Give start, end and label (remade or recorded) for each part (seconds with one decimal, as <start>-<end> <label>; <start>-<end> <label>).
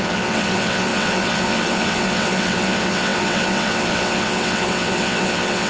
0.0-5.7 remade